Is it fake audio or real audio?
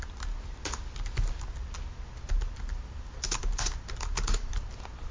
real